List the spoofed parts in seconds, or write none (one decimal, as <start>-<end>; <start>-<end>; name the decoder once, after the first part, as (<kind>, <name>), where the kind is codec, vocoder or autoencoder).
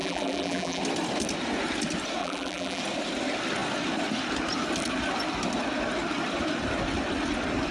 0.0-0.8 (vocoder, BigVGAN v2); 2.2-2.8